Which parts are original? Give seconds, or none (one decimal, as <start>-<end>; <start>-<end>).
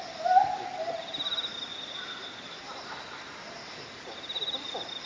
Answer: 0.0-5.1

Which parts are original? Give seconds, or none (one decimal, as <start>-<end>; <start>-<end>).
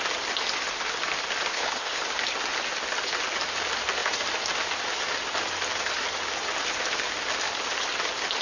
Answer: 0.0-1.5; 2.0-8.4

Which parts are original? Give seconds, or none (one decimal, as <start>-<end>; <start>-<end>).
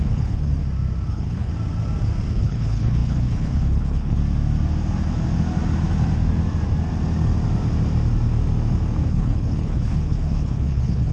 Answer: 0.6-1.1; 1.5-2.3; 4.2-9.1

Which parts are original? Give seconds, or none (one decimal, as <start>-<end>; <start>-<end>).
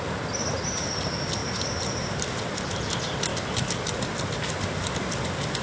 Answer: 0.0-5.6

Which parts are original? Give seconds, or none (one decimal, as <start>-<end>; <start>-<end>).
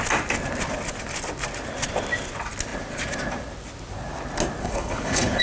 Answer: 0.0-4.6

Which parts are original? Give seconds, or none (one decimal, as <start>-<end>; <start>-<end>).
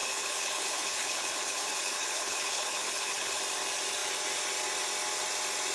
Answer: 3.4-5.7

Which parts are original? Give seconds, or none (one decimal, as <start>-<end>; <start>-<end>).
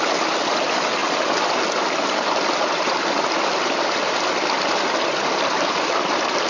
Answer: 0.0-6.5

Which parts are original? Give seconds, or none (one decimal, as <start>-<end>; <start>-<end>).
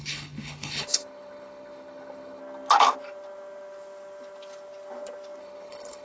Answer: 2.4-5.4